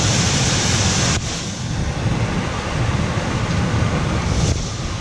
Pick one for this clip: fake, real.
real